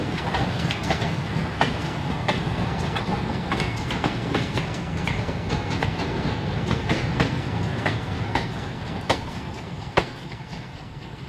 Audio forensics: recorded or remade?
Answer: remade